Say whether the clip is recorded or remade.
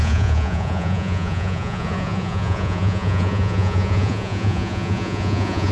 remade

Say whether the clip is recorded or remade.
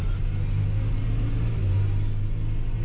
recorded